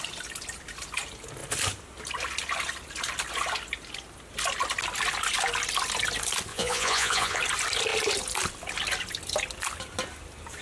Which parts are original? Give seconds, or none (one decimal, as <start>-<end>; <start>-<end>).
0.0-6.5; 7.4-10.6